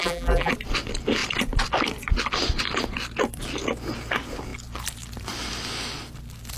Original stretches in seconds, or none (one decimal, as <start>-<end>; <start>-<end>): 0.5-6.6